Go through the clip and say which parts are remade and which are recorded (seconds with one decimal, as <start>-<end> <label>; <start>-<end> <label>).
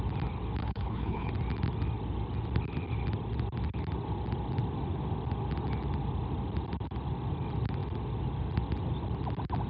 0.0-0.6 recorded; 0.6-1.3 remade; 1.3-9.7 recorded